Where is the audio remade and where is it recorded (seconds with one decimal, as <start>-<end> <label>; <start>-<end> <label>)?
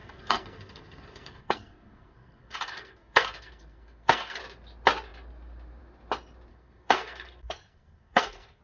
0.0-4.4 remade; 4.4-6.5 recorded; 6.5-8.6 remade